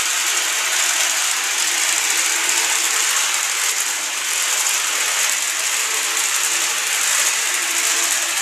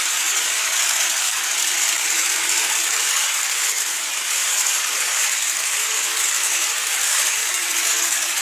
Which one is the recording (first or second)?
first